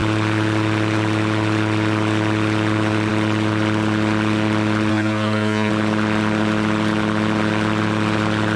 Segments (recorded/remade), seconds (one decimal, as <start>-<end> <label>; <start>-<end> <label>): 0.0-4.9 recorded; 4.9-5.7 remade; 5.7-8.6 recorded